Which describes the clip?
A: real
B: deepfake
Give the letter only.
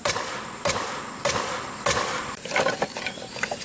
B